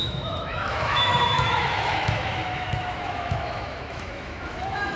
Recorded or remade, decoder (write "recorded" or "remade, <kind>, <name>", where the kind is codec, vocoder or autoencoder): remade, autoencoder, DAC-VAE